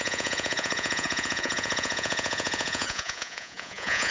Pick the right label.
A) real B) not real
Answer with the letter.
B